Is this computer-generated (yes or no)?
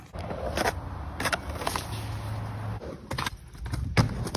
no